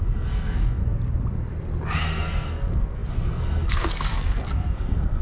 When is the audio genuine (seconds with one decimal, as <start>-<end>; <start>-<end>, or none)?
0.8-2.0